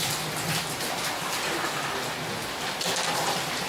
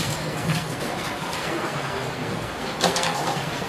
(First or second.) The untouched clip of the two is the first